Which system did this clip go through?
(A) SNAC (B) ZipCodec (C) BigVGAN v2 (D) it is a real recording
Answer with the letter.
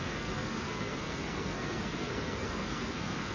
A